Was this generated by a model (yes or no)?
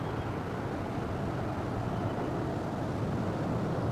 no